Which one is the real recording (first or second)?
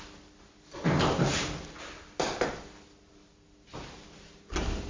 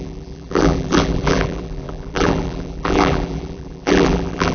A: first